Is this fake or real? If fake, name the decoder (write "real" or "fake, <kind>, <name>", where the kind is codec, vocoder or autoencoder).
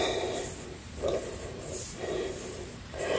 real